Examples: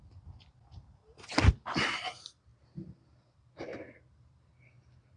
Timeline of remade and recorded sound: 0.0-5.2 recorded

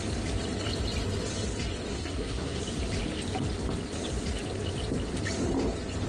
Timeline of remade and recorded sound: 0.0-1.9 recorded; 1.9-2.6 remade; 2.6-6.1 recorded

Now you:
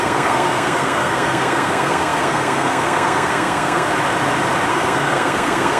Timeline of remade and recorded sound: 0.0-3.9 remade; 3.9-4.7 recorded; 4.7-5.8 remade